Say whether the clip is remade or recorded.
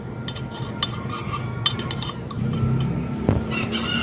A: recorded